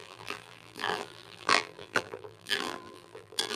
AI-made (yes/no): yes